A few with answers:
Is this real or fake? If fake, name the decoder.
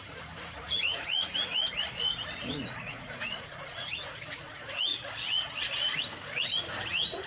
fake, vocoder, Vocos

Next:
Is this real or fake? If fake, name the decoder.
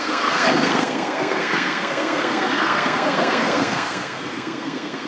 fake, codec, SNAC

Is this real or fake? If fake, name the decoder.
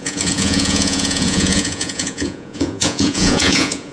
fake, vocoder, Vocos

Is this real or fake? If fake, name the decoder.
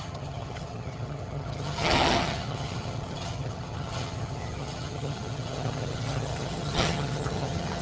fake, vocoder, HiFi-GAN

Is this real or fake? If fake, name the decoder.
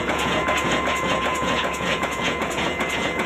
fake, vocoder, Vocos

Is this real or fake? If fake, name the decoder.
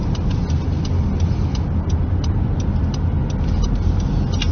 real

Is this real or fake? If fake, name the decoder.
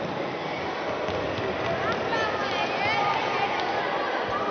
real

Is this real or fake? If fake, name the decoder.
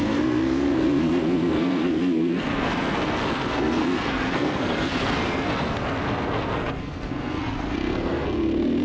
fake, codec, SNAC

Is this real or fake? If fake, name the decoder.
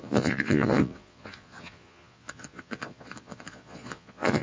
fake, vocoder, Vocos